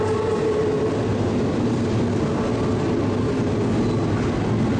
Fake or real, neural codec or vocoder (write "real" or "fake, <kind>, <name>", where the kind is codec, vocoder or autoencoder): real